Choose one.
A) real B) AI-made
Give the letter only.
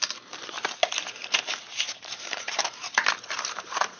B